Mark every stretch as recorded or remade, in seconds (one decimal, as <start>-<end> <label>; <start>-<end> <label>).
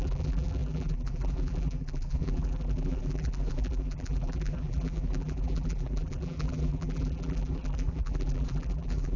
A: 0.0-9.2 remade